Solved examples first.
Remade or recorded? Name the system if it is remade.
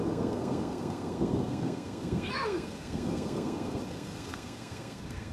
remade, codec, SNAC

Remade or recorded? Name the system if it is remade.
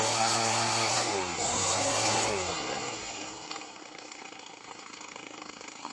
remade, codec, SNAC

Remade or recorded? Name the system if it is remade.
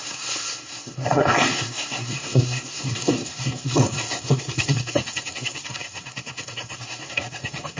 remade, codec, SNAC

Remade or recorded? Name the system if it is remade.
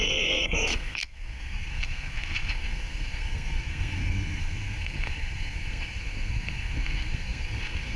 remade, codec, SNAC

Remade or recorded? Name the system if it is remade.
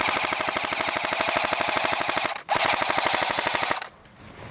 recorded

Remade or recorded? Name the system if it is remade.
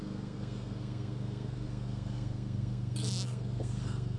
remade, codec, SNAC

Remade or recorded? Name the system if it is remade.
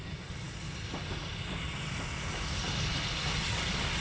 recorded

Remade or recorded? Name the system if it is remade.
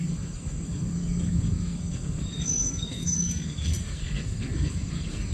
remade, codec, SNAC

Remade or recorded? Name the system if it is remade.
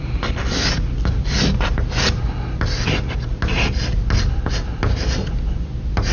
recorded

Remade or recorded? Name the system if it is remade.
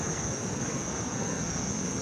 remade, codec, SNAC